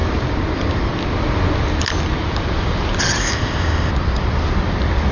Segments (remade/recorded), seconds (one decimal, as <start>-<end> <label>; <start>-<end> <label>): 0.0-3.2 recorded; 3.2-3.9 remade; 3.9-5.1 recorded